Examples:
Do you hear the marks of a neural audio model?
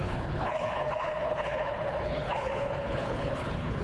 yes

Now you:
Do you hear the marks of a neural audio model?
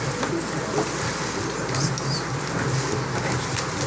no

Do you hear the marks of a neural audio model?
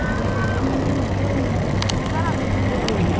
no